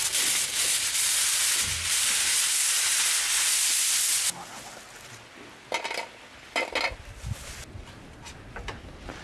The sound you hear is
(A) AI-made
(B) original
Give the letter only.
B